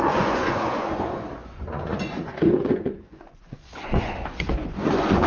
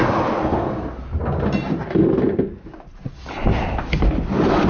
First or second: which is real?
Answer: second